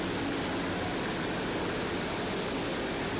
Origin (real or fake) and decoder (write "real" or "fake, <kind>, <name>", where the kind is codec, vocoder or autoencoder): real